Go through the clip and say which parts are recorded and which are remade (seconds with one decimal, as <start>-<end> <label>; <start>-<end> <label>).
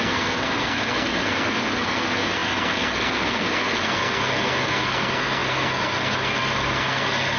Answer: 0.0-7.4 remade